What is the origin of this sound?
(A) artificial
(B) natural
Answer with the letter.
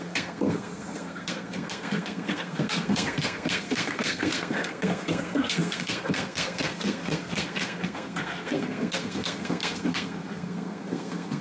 A